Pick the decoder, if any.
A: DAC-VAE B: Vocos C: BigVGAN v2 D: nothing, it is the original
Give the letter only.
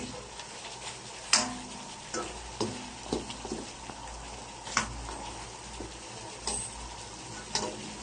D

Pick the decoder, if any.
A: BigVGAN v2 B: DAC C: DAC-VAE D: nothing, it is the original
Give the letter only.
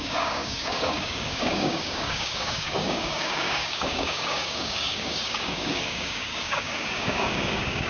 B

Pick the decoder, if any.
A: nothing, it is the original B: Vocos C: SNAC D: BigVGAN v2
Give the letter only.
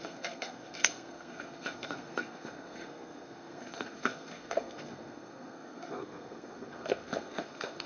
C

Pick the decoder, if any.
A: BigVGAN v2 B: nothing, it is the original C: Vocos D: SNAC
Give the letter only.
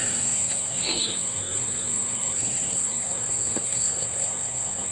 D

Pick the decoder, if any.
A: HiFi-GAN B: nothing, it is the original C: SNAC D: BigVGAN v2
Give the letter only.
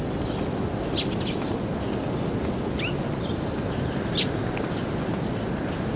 B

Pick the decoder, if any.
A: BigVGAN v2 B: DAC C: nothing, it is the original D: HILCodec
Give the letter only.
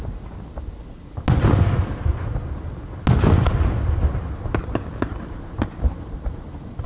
C